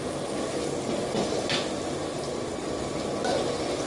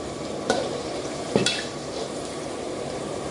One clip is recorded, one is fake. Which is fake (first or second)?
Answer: second